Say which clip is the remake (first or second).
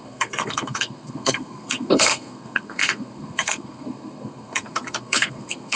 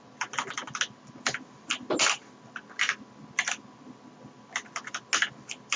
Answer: first